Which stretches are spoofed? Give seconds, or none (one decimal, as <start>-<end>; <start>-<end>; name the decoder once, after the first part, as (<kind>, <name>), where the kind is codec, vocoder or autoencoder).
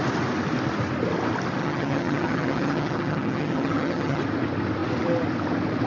1.6-4.2 (vocoder, HiFi-GAN)